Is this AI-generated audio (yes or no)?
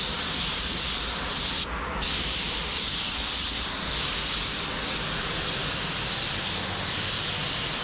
no